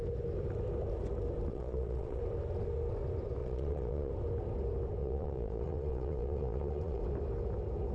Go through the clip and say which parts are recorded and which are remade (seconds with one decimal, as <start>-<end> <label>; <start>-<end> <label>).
0.0-1.5 recorded; 1.5-2.2 remade; 2.2-3.4 recorded; 3.4-4.1 remade; 4.1-5.0 recorded; 5.0-7.0 remade; 7.0-7.9 recorded